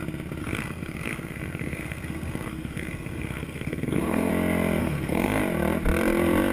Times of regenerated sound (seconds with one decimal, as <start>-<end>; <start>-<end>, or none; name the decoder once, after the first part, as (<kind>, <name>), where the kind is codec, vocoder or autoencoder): 0.4-4.3 (codec, SNAC); 4.8-5.4